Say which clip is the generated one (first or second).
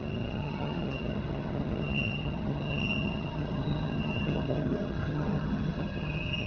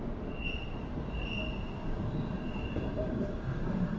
first